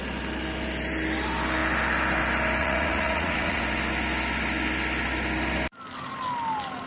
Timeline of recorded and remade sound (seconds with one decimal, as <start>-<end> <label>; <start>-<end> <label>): 0.0-2.6 recorded; 2.6-3.6 remade; 3.6-6.9 recorded